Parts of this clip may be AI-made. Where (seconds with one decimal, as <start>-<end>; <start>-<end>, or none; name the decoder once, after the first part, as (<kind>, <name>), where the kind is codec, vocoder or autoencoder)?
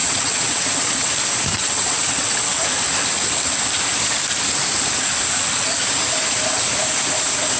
0.0-1.1 (vocoder, WaveNeXt); 1.5-2.6